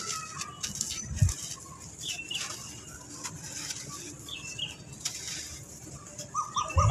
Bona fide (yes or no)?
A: yes